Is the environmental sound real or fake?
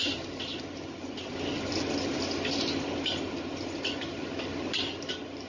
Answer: real